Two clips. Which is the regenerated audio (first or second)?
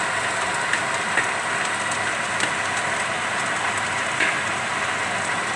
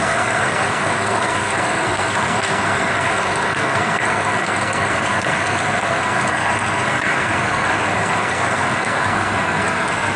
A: second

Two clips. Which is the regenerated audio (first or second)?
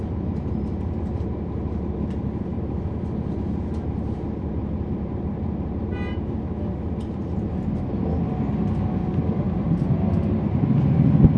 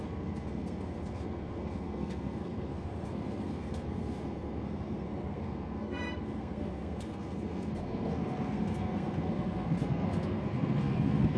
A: second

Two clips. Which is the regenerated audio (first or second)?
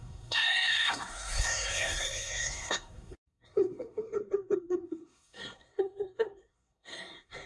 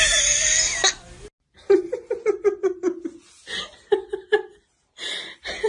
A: first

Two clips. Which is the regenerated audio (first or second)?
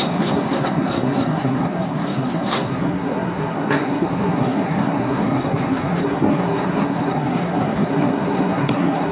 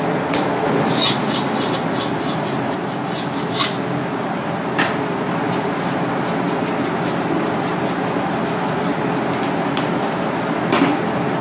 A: first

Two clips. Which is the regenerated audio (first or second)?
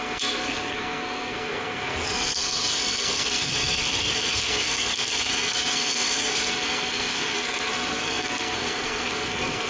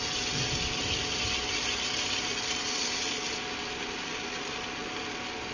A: first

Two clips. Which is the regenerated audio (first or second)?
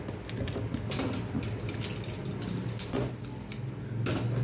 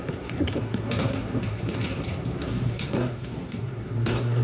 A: second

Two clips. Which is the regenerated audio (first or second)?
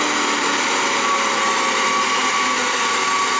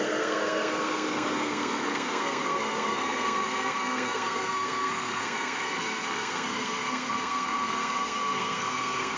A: second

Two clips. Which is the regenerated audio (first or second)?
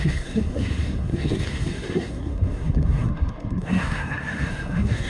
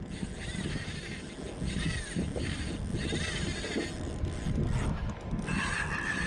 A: first